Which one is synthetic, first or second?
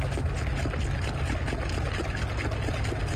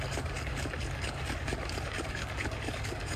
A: second